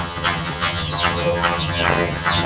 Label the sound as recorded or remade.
remade